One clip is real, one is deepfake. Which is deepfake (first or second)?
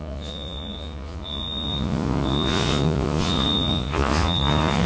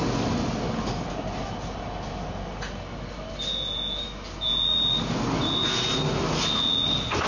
first